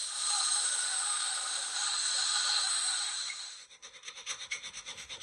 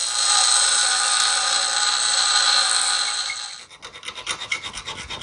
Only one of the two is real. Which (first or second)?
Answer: second